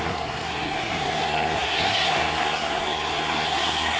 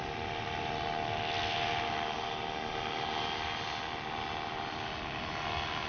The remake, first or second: first